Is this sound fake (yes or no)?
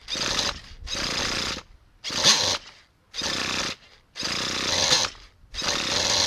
no